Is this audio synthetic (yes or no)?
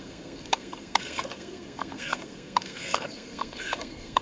yes